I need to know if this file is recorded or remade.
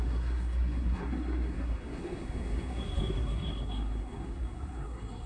remade